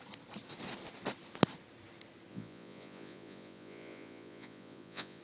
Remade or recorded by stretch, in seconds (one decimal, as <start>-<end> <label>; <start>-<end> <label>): 0.0-2.3 recorded; 2.3-5.2 remade